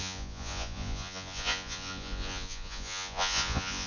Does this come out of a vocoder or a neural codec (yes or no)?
yes